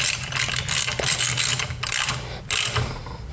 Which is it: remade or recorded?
recorded